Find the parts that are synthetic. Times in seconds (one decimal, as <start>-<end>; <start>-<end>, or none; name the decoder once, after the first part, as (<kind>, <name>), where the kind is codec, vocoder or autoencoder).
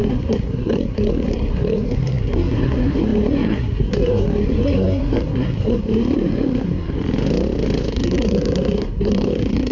0.0-7.0 (codec, SNAC); 7.9-9.7